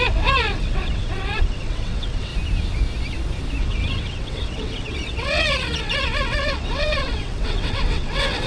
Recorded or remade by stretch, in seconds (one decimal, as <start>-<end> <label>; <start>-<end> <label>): 0.0-2.3 remade; 2.3-3.6 recorded; 3.6-8.5 remade